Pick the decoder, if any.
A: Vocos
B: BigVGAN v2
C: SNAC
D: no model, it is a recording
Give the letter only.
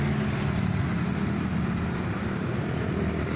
D